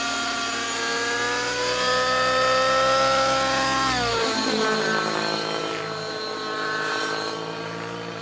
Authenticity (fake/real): real